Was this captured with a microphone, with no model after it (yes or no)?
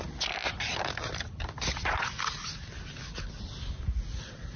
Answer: yes